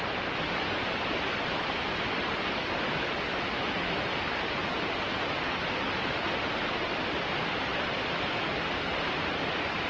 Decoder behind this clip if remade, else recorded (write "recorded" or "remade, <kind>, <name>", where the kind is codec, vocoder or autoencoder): recorded